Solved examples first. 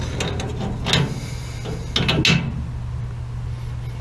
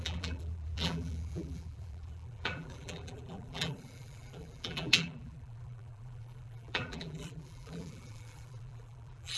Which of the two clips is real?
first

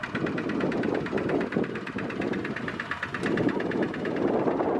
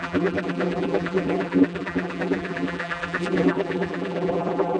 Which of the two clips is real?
first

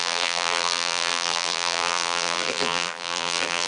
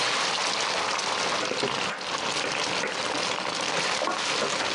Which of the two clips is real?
second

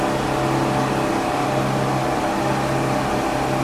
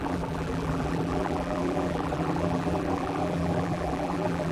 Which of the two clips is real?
first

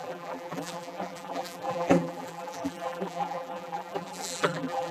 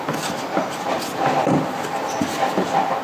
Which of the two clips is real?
second